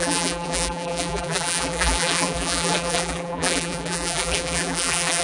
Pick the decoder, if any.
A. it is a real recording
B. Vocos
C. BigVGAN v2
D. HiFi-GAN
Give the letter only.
C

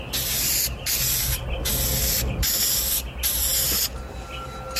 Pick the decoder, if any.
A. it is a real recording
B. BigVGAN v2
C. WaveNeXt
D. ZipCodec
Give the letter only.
A